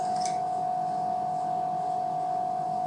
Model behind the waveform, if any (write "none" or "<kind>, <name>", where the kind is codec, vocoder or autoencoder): none